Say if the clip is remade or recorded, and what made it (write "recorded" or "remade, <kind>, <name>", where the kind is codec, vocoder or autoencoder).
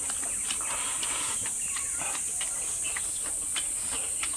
recorded